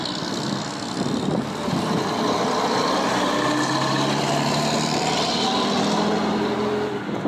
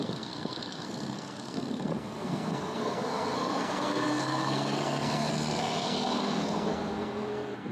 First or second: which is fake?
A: second